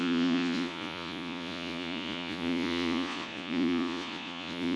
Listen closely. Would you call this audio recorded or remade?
remade